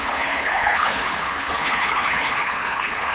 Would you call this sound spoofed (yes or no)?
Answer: yes